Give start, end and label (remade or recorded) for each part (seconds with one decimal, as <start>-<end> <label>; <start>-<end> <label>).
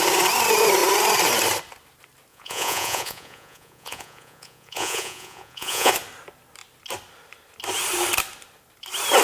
0.0-2.3 recorded; 2.3-5.9 remade; 5.9-9.2 recorded